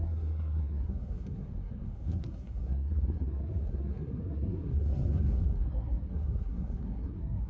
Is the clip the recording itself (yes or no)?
no